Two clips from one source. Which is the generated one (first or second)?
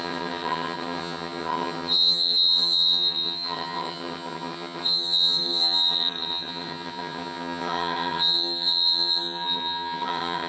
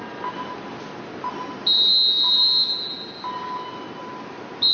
first